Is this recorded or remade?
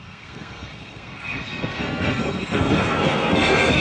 remade